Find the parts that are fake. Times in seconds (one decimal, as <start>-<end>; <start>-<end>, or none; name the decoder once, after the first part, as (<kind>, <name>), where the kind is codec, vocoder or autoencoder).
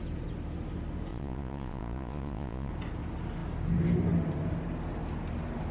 1.1-2.7 (vocoder, Vocos)